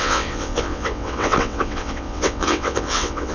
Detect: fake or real fake